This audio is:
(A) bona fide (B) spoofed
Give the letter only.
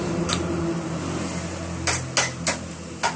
A